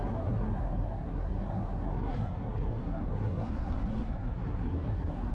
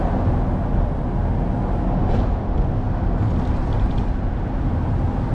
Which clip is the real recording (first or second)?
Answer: second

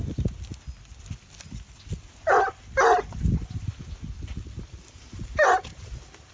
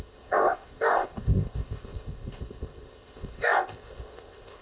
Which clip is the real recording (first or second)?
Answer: first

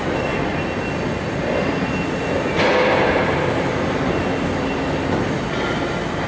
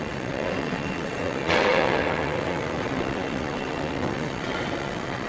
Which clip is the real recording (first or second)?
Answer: first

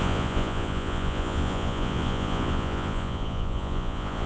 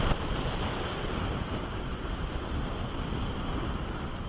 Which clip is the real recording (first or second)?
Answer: second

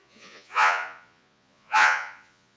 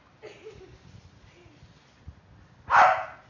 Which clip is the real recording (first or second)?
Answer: second